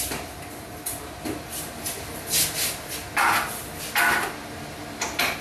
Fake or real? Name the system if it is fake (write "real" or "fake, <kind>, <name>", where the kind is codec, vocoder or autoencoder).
real